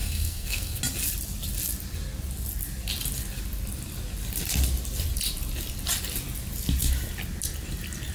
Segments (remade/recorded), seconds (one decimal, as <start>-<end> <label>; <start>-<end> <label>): 0.0-0.8 remade; 0.8-8.1 recorded